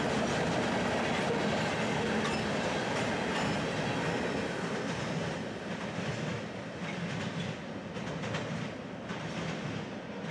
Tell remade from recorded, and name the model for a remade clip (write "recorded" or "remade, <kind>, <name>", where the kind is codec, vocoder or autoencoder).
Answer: recorded